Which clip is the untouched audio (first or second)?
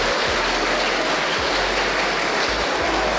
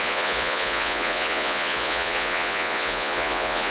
first